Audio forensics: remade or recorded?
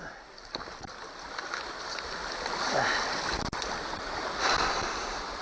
recorded